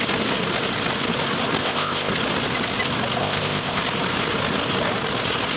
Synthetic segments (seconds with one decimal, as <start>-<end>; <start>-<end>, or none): 1.6-2.1; 3.2-3.8